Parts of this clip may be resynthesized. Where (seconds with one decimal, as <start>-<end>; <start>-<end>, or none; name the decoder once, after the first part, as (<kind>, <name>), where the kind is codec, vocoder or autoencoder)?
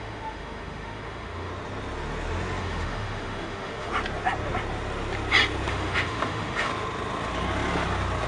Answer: 0.0-1.5 (autoencoder, DAC-VAE); 2.6-3.9; 5.7-6.7